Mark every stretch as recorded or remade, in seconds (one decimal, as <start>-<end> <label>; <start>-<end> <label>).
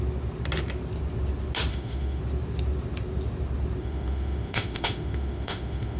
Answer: 0.0-1.7 recorded; 1.7-2.2 remade; 2.2-3.8 recorded; 3.8-6.0 remade